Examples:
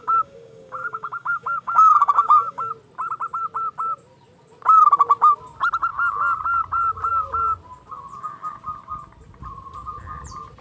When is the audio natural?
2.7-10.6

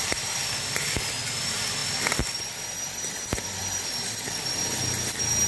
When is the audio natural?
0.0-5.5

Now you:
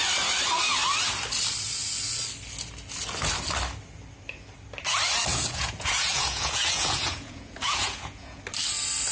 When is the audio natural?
0.0-5.3; 8.4-9.1